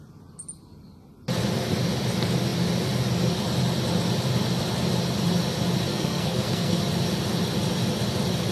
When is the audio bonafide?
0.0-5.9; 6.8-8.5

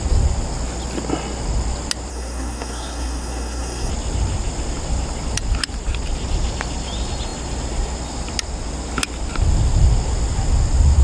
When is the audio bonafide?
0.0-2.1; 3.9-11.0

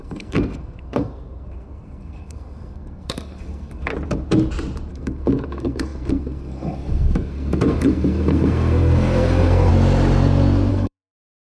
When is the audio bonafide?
3.9-4.9; 9.7-10.7

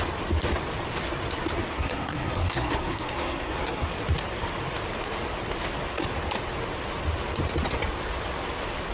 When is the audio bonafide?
0.0-1.7; 3.9-8.9